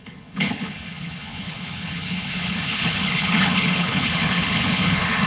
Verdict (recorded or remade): remade